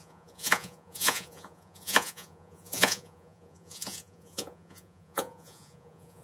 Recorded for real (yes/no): no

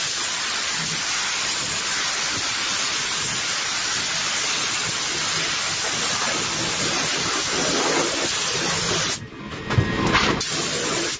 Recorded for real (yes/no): yes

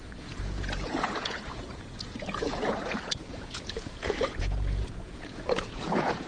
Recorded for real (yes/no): no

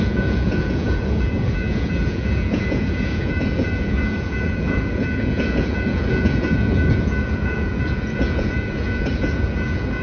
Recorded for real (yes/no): no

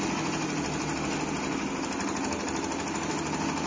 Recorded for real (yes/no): yes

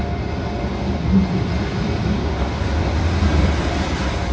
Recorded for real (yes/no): yes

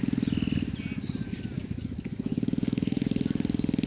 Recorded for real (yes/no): yes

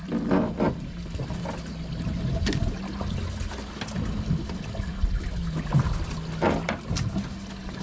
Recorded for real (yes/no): yes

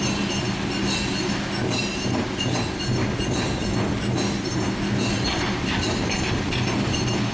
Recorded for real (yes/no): yes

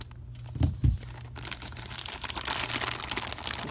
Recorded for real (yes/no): yes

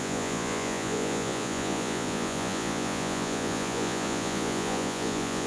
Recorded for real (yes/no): no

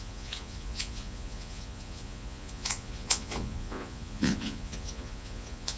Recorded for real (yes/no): no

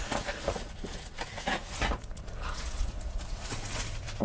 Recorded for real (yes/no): no